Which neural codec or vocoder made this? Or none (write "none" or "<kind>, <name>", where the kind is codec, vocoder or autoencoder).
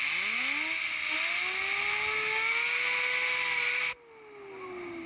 none